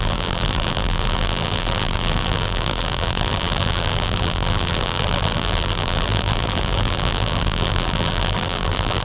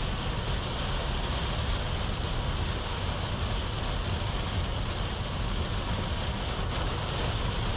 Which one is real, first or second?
second